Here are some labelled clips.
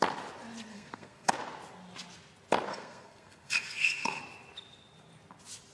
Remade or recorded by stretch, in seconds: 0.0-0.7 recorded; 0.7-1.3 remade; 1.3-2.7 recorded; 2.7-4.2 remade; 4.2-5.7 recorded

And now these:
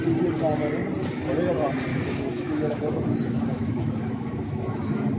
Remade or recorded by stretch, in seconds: 0.0-1.9 recorded; 1.9-5.2 remade

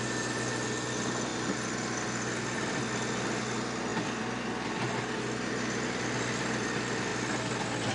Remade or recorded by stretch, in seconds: 0.0-7.9 recorded

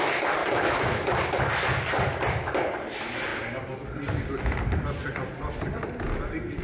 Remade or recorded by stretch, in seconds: 0.0-0.4 recorded; 0.4-1.2 remade; 1.2-6.6 recorded

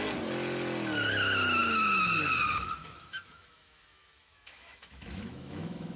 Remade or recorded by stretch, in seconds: 0.0-2.8 recorded; 2.8-6.0 remade

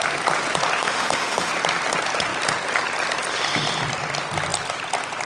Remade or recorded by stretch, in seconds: 0.0-0.8 recorded; 0.8-1.5 remade; 1.5-5.2 recorded

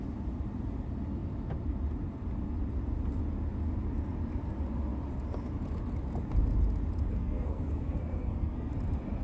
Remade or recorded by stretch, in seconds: 0.0-7.1 recorded; 7.1-8.7 remade; 8.7-9.2 recorded

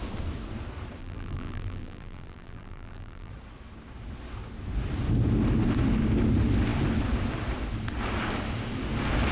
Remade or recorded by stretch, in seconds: 0.0-1.0 recorded; 1.0-3.3 remade; 3.3-9.3 recorded